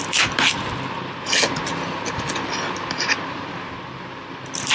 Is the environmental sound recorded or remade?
recorded